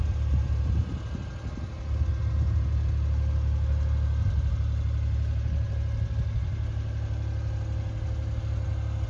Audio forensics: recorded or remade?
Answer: recorded